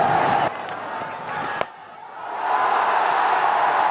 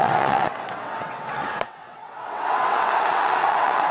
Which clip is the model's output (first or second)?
second